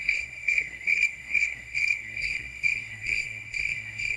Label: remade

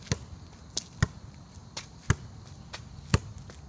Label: recorded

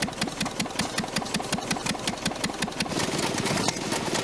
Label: recorded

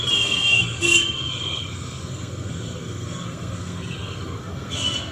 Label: remade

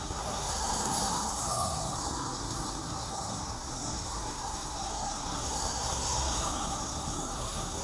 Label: remade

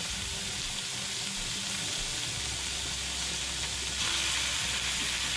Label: recorded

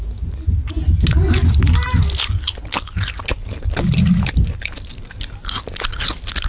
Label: recorded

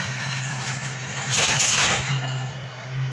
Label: remade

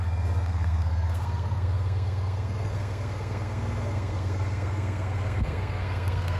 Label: remade